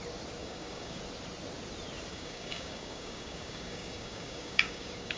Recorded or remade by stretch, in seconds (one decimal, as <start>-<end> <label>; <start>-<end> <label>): 0.0-0.4 recorded; 0.4-1.0 remade; 1.0-2.1 recorded; 2.1-5.2 remade